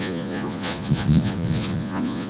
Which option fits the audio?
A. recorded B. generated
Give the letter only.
B